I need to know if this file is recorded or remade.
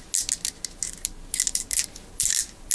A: recorded